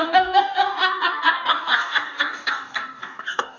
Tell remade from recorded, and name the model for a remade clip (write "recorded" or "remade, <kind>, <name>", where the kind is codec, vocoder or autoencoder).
remade, codec, DAC